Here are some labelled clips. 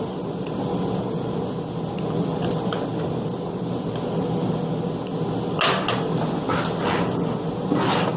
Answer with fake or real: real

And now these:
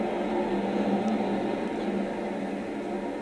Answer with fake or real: real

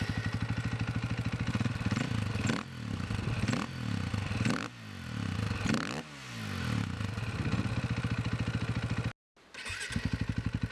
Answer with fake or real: real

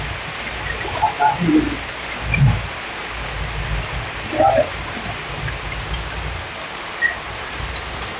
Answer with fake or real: real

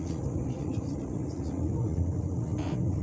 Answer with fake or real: fake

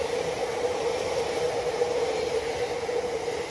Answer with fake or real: real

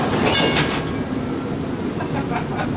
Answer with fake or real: real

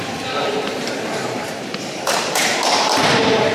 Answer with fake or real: fake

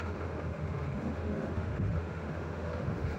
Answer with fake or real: fake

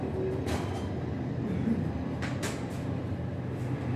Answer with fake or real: real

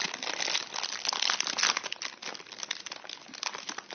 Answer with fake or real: real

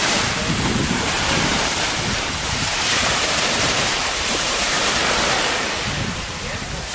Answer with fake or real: fake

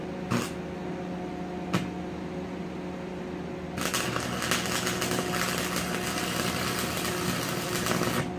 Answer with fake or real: real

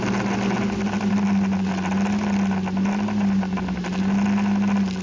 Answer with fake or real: real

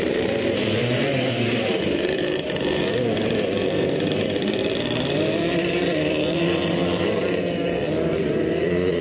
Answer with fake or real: fake